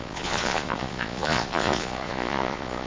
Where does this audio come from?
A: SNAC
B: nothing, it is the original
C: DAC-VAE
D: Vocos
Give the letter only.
D